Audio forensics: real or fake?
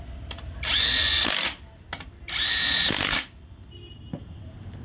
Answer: real